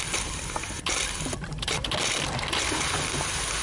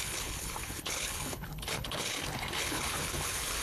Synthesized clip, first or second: second